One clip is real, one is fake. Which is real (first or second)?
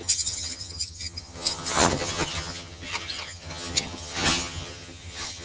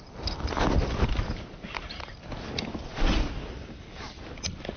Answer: second